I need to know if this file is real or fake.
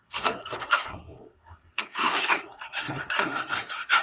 fake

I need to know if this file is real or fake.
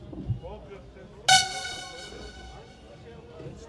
real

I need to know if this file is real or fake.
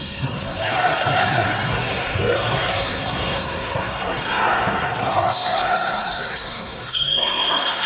fake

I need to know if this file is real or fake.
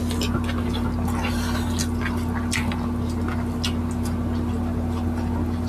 real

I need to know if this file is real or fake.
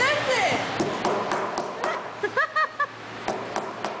real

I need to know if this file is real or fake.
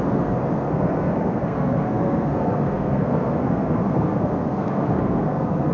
fake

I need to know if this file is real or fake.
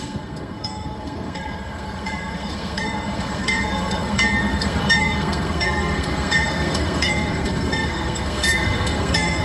fake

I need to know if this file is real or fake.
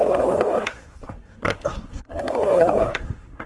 fake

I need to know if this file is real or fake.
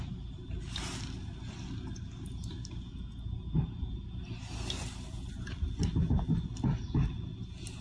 real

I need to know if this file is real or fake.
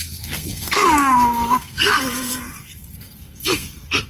fake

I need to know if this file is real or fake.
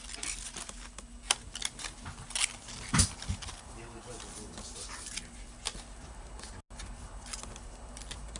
real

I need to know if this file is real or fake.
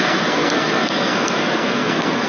fake